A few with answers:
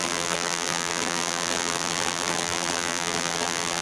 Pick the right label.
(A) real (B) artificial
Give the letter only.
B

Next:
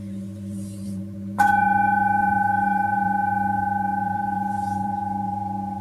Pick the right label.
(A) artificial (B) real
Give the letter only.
A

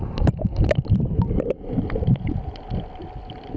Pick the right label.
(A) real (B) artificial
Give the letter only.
A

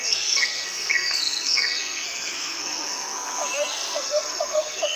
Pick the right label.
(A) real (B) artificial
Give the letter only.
B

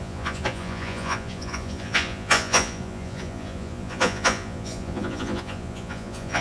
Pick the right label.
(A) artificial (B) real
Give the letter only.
A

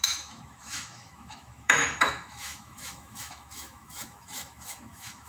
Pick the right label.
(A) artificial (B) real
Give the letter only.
A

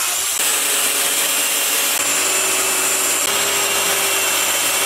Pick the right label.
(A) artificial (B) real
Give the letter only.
B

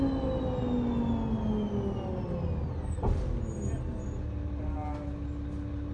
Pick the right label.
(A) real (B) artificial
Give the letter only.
A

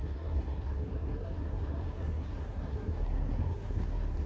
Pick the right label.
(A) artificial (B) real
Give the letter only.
A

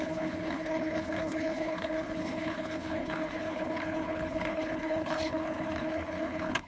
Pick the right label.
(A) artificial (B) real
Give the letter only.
A